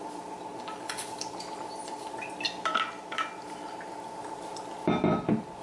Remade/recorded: recorded